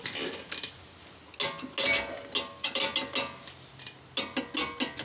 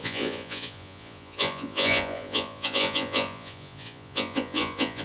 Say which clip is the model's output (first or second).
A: second